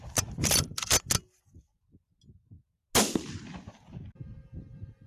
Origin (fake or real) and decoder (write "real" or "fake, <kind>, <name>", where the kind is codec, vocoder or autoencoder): real